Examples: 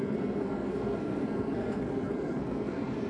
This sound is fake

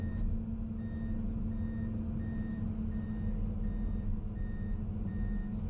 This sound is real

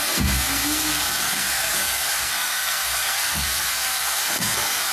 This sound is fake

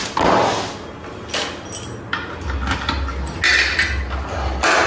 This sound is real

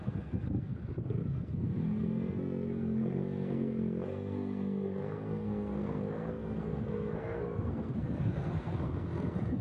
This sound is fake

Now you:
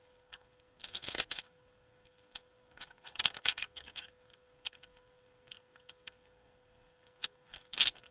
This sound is fake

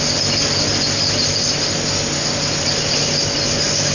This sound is real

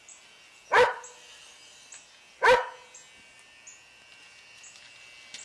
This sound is real